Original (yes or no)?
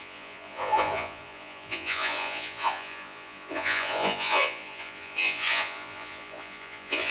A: no